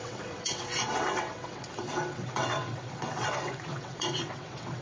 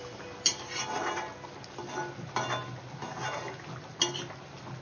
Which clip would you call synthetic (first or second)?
first